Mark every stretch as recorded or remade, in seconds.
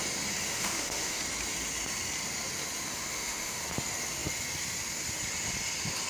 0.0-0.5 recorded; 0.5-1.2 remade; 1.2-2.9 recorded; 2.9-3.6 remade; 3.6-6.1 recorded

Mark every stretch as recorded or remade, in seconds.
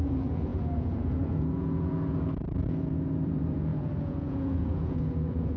0.0-5.6 remade